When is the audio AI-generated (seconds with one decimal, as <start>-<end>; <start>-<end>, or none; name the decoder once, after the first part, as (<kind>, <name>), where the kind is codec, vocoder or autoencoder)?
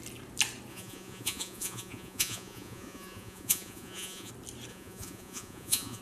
0.7-4.3 (vocoder, Vocos); 4.7-6.0